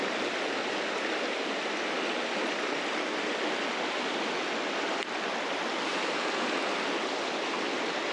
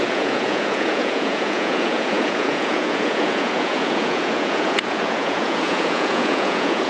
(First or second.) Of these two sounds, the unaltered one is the first